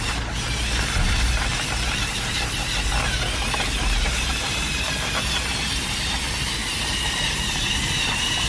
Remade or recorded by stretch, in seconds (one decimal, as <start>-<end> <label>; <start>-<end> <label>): 0.0-6.6 recorded; 6.6-7.4 remade; 7.4-8.5 recorded